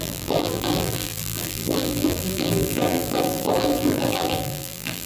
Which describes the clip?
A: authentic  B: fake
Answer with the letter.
B